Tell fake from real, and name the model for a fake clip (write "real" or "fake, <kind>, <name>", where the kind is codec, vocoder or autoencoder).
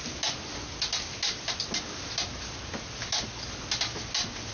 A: real